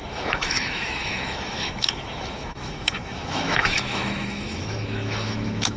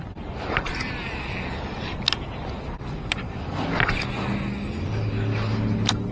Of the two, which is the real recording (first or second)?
second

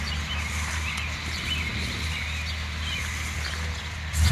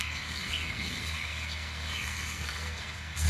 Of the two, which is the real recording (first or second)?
first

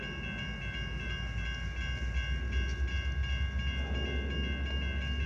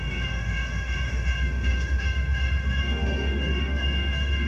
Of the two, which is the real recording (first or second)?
first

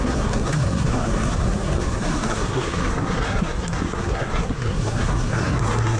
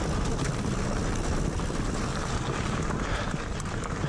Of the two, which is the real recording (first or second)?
second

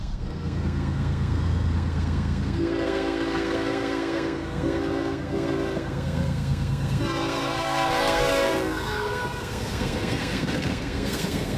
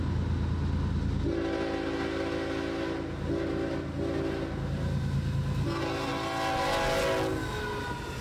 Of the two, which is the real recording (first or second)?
second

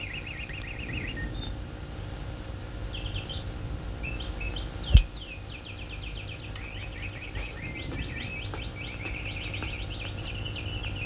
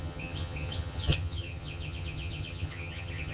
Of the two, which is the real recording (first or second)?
first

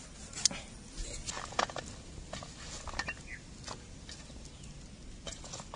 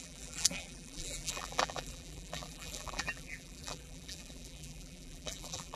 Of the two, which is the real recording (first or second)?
first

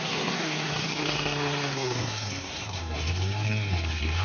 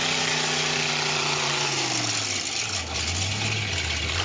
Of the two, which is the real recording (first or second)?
second